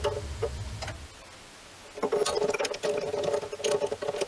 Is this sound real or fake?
real